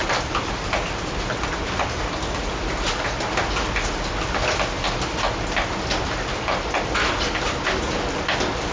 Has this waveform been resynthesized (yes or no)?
no